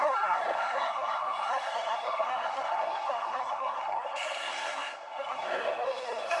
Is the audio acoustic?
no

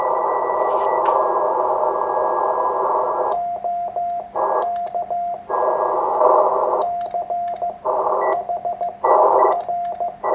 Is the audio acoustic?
yes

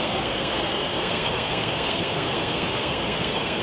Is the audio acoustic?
no